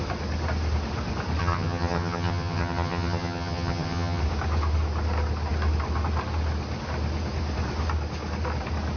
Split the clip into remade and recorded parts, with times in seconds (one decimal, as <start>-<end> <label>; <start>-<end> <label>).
0.0-1.4 recorded; 1.4-4.2 remade; 4.2-9.0 recorded